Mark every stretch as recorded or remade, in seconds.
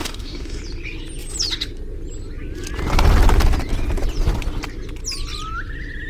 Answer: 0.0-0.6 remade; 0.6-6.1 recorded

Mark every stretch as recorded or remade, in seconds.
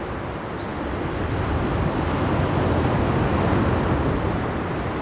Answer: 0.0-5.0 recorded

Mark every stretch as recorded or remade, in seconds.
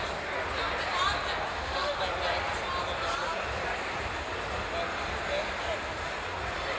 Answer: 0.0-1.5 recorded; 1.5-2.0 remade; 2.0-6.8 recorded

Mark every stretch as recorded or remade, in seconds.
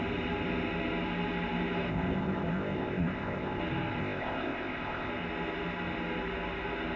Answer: 0.0-1.9 recorded; 1.9-3.6 remade; 3.6-4.0 recorded; 4.0-5.1 remade; 5.1-7.0 recorded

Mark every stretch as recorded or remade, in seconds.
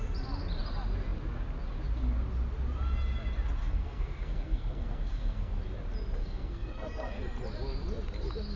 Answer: 0.0-3.6 recorded; 3.6-5.6 remade; 5.6-6.2 recorded; 6.2-7.2 remade; 7.2-8.6 recorded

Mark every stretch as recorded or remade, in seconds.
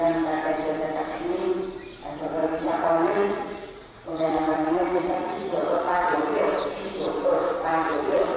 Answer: 0.0-2.4 recorded; 2.4-6.4 remade; 6.4-7.7 recorded; 7.7-8.4 remade